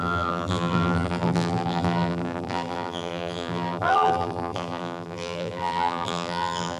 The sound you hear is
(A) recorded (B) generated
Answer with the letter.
B